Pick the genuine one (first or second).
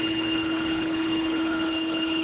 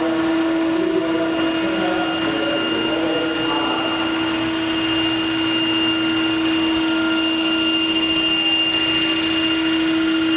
second